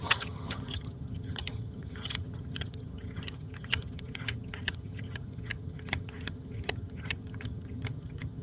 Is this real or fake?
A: fake